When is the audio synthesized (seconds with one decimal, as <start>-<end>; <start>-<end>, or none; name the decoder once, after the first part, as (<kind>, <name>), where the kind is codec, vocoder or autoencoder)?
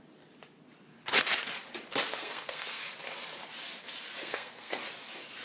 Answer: 2.1-2.8 (codec, SNAC); 4.2-4.8